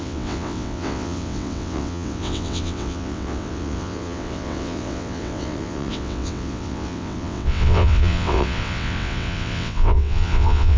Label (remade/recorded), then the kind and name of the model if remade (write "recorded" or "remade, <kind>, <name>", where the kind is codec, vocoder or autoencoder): remade, vocoder, WaveNeXt